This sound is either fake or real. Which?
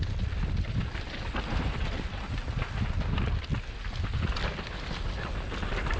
real